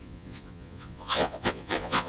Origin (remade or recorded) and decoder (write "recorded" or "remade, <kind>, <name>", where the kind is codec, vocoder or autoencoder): remade, vocoder, Vocos